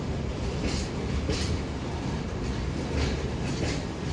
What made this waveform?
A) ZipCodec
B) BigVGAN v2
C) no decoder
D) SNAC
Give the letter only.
C